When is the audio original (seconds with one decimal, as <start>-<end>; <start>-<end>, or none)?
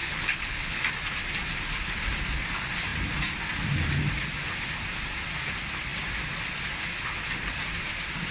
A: 0.8-8.3